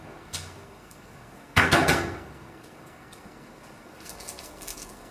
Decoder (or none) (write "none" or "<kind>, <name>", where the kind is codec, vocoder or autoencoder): codec, SNAC